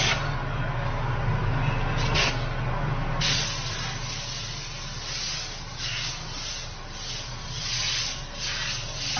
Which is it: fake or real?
real